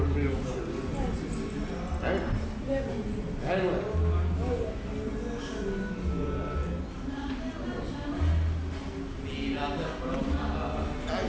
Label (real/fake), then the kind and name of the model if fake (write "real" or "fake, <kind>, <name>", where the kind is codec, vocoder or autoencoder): real